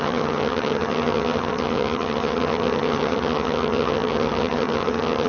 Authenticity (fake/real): fake